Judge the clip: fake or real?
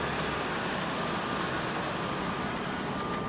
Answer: real